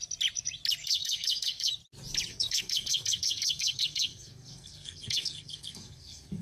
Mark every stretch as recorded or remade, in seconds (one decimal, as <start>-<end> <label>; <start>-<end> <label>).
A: 0.0-0.8 recorded; 0.8-1.7 remade; 1.7-2.3 recorded; 2.3-6.4 remade